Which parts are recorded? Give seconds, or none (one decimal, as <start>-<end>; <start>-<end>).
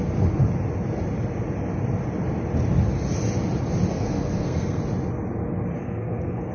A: 0.0-3.9; 4.8-5.8